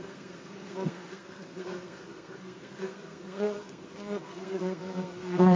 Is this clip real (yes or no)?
no